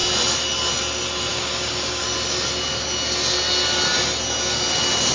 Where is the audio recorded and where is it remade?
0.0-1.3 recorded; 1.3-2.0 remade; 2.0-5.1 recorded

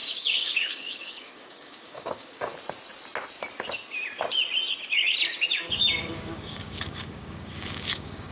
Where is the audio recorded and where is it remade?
0.0-2.5 remade; 2.5-5.6 recorded; 5.6-8.3 remade

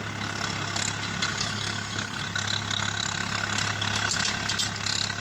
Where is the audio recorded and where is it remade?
0.0-1.3 recorded; 1.3-2.2 remade; 2.2-5.2 recorded